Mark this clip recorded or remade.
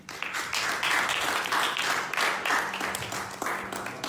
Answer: recorded